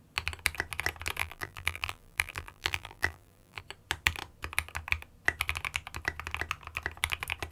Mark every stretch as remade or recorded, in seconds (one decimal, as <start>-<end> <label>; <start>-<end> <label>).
0.0-1.2 recorded; 1.2-3.6 remade; 3.6-7.5 recorded